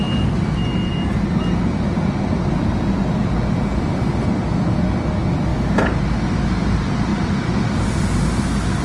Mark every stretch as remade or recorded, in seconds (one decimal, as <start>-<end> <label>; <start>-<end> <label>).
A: 0.0-8.8 recorded